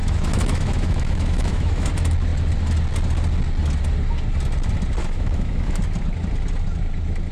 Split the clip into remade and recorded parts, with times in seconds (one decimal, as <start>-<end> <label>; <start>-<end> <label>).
0.0-1.9 remade; 1.9-5.0 recorded; 5.0-5.8 remade; 5.8-7.3 recorded